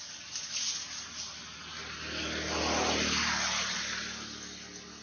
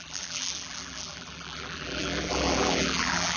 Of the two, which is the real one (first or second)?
first